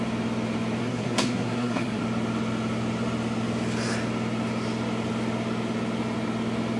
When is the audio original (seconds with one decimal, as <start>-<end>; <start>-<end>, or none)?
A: 0.0-0.8; 2.0-6.8